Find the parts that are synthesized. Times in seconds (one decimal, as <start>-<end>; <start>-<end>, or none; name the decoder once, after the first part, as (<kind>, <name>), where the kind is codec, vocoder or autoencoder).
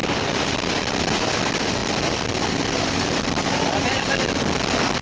0.0-1.4 (vocoder, BigVGAN v2); 1.8-4.1